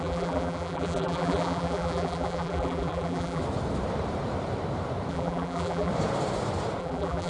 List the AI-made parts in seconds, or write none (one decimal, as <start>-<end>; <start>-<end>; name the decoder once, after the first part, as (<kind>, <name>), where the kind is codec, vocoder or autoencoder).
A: 0.0-3.4 (vocoder, BigVGAN v2); 5.1-5.9; 6.8-7.3